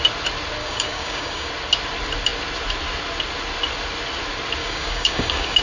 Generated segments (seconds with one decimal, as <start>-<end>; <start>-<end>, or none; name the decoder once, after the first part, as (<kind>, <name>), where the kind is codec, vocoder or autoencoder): 0.6-1.5 (codec, DAC); 4.6-5.6